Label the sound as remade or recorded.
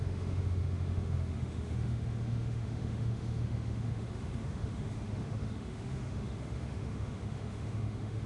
remade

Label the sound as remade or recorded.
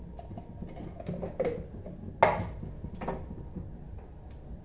recorded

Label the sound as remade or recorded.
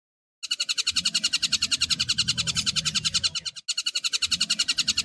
recorded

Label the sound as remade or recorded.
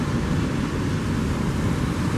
recorded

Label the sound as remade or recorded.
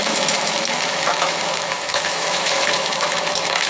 remade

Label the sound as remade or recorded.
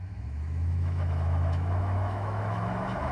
remade